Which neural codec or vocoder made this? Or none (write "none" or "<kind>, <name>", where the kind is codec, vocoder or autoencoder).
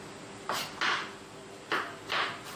none